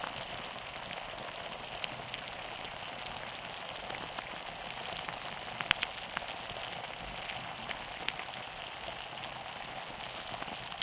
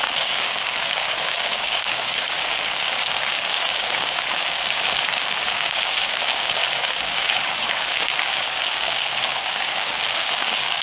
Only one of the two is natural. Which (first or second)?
first